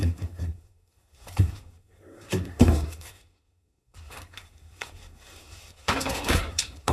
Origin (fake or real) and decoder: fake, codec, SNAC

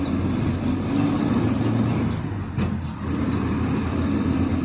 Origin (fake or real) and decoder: real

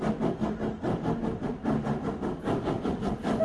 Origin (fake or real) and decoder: real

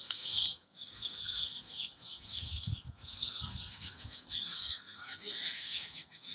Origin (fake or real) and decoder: fake, codec, SNAC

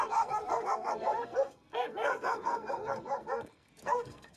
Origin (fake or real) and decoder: fake, codec, SNAC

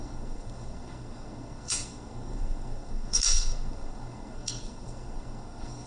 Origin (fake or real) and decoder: fake, codec, SNAC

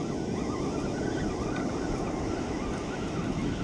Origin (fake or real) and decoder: real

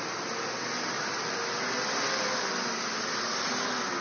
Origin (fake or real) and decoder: real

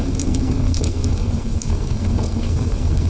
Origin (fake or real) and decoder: fake, codec, SNAC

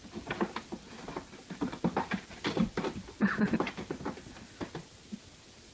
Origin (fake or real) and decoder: real